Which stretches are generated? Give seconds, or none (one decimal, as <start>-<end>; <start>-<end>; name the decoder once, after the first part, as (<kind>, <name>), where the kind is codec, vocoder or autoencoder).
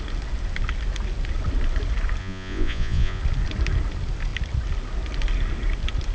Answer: 2.2-3.2 (vocoder, Vocos)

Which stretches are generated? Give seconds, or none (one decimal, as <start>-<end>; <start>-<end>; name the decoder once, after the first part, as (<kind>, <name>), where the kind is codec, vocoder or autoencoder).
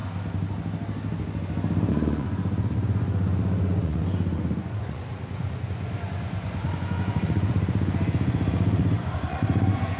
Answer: 1.9-10.0 (vocoder, Vocos)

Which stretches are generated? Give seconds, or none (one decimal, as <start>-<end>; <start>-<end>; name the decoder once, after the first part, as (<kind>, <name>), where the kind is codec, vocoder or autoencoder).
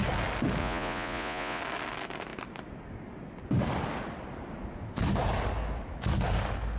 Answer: 0.6-1.6 (vocoder, Vocos)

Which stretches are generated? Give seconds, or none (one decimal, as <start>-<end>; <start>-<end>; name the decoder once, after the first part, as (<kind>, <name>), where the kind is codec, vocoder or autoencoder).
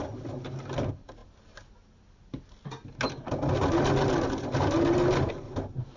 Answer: none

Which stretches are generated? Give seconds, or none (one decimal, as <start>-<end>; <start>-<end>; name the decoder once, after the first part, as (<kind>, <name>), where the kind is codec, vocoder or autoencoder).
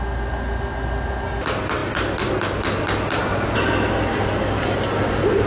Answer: none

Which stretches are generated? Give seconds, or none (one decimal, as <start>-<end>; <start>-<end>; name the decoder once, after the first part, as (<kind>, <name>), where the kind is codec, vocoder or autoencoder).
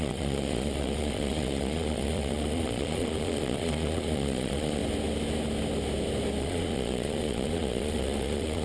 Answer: 0.0-4.8 (vocoder, Vocos); 6.4-8.6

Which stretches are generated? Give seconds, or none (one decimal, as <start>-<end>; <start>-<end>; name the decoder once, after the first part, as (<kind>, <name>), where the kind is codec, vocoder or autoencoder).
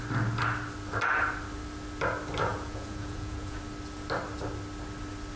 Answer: 2.5-3.6 (vocoder, Vocos)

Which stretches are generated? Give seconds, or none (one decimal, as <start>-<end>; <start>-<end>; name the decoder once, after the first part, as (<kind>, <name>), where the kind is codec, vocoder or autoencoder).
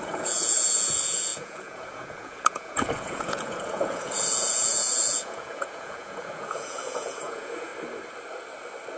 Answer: 0.0-7.7 (vocoder, Vocos)